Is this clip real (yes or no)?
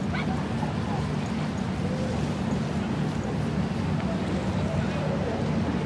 yes